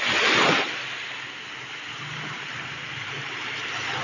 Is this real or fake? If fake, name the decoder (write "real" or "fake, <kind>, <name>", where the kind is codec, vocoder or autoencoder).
real